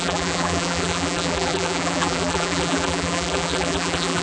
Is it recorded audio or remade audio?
remade